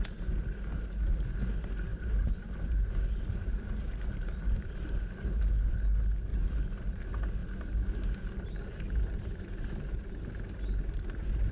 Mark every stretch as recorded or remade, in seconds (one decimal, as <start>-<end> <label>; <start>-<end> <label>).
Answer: 0.0-1.9 recorded; 1.9-5.7 remade; 5.7-6.3 recorded; 6.3-7.0 remade; 7.0-7.4 recorded; 7.4-11.5 remade